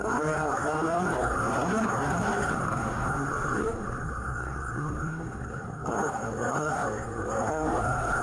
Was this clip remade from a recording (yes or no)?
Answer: yes